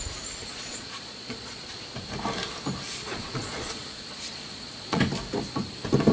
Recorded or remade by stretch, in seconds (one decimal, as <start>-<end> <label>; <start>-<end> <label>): 0.0-0.5 recorded; 0.5-1.7 remade; 1.7-3.0 recorded; 3.0-5.0 remade; 5.0-6.1 recorded